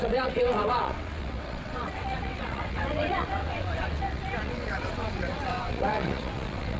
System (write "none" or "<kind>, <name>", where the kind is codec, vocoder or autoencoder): vocoder, WaveNeXt